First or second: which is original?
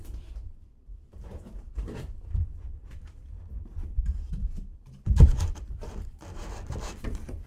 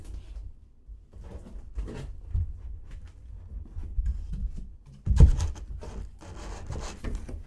second